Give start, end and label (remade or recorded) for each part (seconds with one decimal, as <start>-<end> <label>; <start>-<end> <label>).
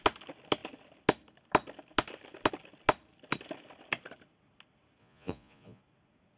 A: 0.0-5.0 recorded; 5.0-5.8 remade; 5.8-6.4 recorded